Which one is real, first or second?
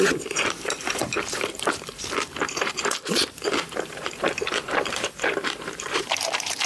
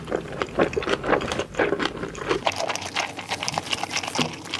second